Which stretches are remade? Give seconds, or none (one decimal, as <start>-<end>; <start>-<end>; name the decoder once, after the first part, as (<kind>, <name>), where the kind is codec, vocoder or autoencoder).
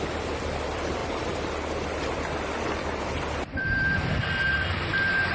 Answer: 0.0-5.3 (vocoder, BigVGAN v2)